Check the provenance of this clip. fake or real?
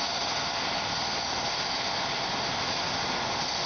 real